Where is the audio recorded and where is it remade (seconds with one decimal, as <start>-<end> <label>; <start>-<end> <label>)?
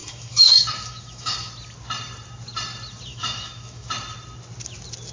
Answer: 0.0-1.5 remade; 1.5-3.1 recorded; 3.1-3.9 remade; 3.9-5.1 recorded